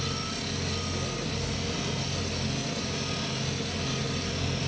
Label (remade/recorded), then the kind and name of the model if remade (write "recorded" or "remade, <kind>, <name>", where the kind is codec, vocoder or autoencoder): recorded